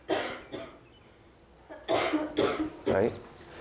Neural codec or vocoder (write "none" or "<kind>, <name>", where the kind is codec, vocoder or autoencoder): none